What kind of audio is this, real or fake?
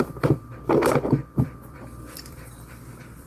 fake